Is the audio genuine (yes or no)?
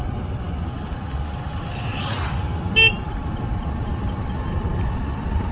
yes